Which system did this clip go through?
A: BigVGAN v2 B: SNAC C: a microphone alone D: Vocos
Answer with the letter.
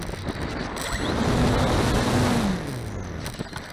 C